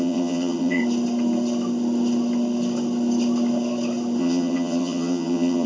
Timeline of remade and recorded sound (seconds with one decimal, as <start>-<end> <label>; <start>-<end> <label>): 0.0-0.8 remade; 0.8-4.2 recorded; 4.2-5.7 remade